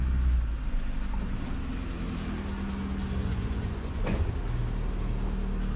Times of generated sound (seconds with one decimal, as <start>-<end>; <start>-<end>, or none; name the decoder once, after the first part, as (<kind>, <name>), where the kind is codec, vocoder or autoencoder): 3.2-4.3 (vocoder, Vocos)